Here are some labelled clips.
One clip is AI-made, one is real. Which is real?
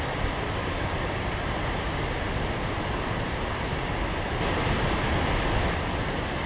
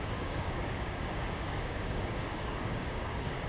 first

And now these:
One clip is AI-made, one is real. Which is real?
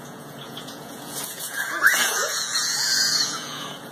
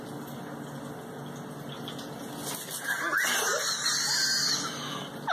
second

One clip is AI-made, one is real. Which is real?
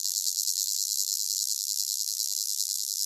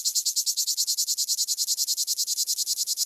second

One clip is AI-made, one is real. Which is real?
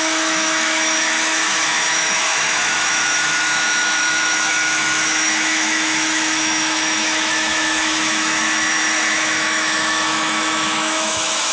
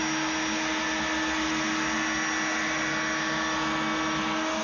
second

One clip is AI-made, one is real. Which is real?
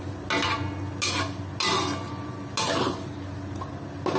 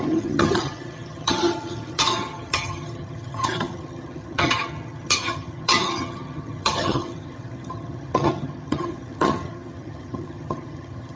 first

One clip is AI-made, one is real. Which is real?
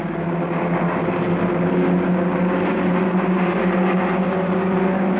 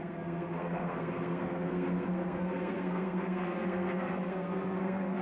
first